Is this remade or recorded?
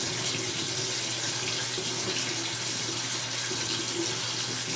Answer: recorded